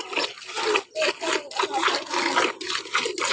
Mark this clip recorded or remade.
recorded